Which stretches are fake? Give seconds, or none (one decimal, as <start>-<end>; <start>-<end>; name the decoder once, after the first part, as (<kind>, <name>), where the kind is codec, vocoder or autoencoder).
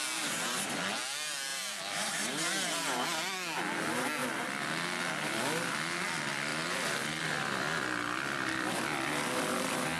1.5-2.1 (vocoder, BigVGAN v2); 6.5-7.2